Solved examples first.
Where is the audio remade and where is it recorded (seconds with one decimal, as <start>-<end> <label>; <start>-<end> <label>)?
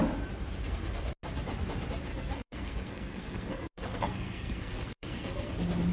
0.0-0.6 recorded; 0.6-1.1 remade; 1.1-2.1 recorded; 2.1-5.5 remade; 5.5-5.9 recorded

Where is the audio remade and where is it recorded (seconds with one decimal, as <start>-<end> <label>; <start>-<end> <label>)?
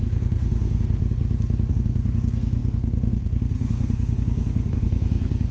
0.0-1.0 remade; 1.0-1.7 recorded; 1.7-5.5 remade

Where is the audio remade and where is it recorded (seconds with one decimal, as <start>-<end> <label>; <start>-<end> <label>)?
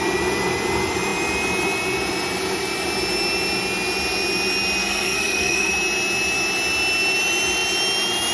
0.0-4.8 recorded; 4.8-5.7 remade; 5.7-8.3 recorded